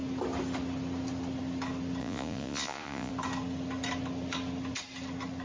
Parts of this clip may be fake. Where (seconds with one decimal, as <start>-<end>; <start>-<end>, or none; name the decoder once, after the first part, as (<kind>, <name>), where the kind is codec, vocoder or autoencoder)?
2.0-3.1 (vocoder, Vocos)